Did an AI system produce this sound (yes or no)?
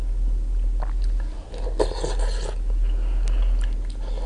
no